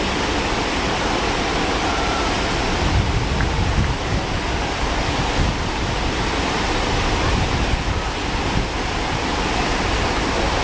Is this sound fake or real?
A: real